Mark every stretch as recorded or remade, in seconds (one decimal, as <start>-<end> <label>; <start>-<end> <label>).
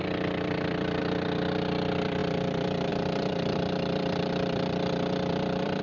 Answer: 0.0-5.8 remade